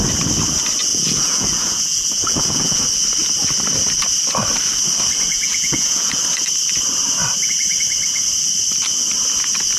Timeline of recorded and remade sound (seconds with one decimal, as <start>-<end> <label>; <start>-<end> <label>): 0.0-0.9 recorded; 0.9-2.8 remade; 2.8-5.3 recorded; 5.3-6.2 remade; 6.2-9.8 recorded

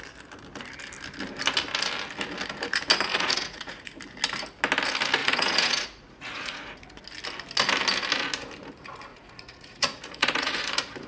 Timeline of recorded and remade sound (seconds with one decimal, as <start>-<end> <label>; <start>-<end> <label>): 0.0-3.1 recorded; 3.1-4.0 remade; 4.0-5.2 recorded; 5.2-6.9 remade; 6.9-9.1 recorded; 9.1-10.7 remade; 10.7-11.1 recorded

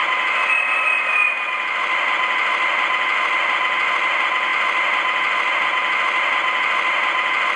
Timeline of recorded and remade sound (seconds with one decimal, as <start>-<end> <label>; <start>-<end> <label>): 0.0-7.6 remade